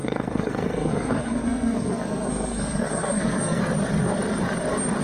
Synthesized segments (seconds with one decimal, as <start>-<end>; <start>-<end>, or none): 0.0-3.6